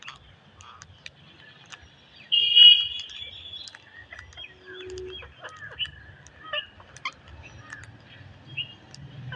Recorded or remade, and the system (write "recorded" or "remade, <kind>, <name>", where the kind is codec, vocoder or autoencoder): recorded